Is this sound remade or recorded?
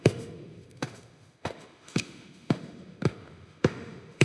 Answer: remade